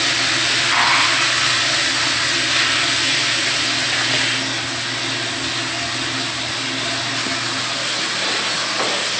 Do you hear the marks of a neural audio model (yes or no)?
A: no